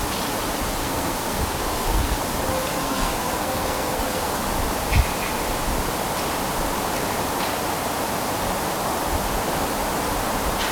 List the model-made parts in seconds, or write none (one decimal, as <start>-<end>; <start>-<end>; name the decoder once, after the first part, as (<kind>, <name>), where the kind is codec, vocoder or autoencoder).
0.8-2.2 (codec, SNAC); 2.8-4.4